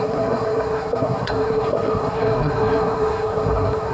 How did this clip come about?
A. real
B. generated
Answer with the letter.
B